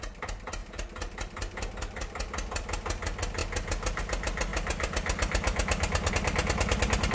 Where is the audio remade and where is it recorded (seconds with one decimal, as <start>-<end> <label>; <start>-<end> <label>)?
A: 0.0-7.1 recorded